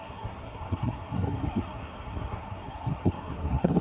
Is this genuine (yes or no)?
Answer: no